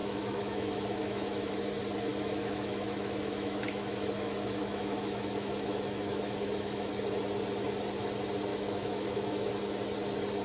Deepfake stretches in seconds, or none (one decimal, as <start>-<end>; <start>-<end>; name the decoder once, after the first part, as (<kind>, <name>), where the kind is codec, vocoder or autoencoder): 0.0-1.5 (autoencoder, DAC-VAE); 2.1-6.9; 8.5-9.5

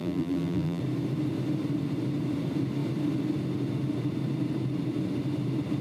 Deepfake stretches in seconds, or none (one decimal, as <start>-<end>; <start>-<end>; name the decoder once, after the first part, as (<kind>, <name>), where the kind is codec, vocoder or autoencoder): 0.0-0.8 (vocoder, BigVGAN v2)

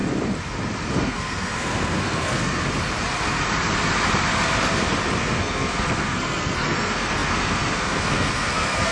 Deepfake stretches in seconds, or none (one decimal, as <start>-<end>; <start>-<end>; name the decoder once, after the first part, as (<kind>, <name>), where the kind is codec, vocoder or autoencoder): 0.9-2.6 (codec, SNAC); 5.2-8.9